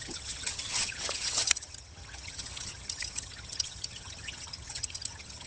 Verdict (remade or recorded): remade